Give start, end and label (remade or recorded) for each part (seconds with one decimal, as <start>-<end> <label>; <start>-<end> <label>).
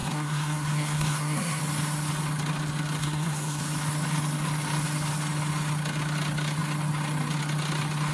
0.0-1.6 remade; 1.6-3.0 recorded; 3.0-3.6 remade; 3.6-8.1 recorded